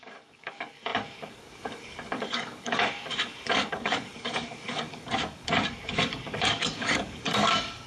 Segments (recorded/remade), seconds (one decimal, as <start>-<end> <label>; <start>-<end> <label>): 0.0-7.9 remade